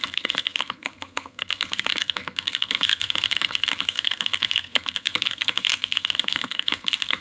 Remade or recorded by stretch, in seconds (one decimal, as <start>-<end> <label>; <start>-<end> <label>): 0.0-7.2 remade